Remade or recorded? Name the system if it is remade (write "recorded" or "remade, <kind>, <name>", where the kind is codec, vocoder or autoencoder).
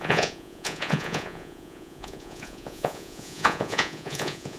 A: remade, vocoder, Vocos